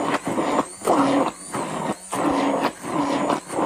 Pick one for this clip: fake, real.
real